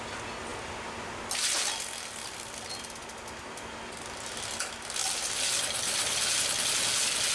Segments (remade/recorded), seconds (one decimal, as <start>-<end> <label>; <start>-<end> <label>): 0.0-5.0 recorded; 5.0-6.3 remade; 6.3-7.3 recorded